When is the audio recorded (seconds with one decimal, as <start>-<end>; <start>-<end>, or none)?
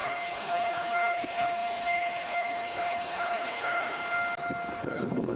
4.0-4.8